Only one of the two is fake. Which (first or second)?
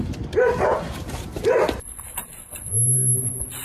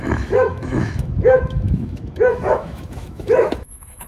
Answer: second